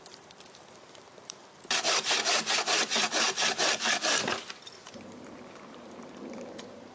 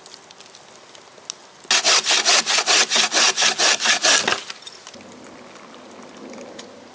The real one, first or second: second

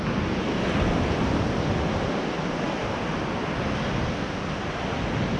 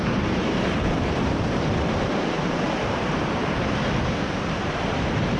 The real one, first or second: first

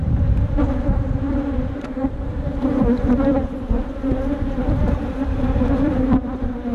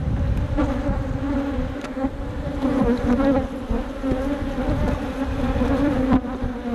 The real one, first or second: second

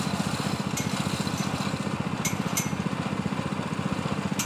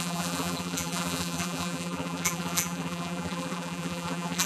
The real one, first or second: first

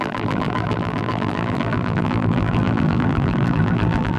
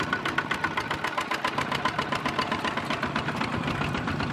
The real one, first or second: second